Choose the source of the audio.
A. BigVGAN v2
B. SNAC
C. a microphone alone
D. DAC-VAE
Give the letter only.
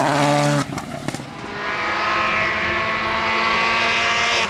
C